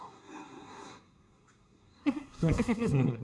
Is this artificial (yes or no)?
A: yes